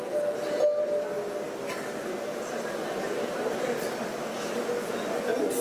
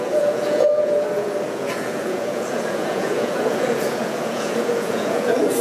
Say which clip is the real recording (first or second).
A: first